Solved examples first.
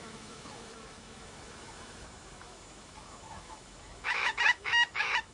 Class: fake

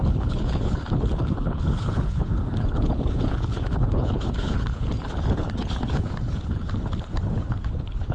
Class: fake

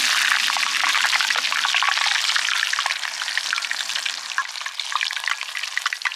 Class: real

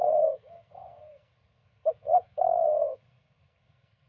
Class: fake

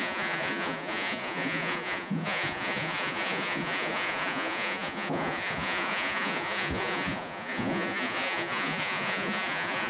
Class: fake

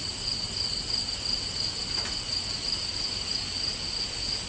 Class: real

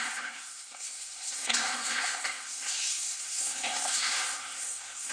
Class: fake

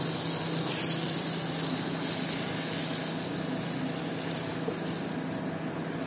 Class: real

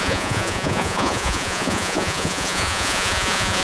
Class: fake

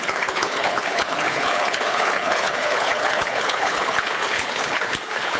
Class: fake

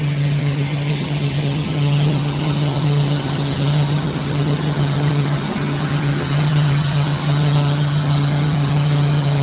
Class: fake